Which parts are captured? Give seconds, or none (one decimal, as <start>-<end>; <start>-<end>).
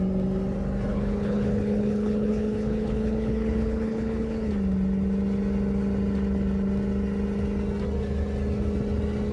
0.0-0.9; 4.5-9.3